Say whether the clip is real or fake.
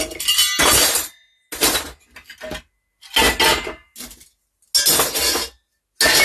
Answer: real